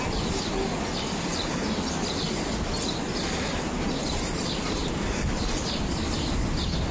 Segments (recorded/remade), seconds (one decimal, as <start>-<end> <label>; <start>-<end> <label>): 0.0-4.0 recorded; 4.0-6.2 remade; 6.2-6.9 recorded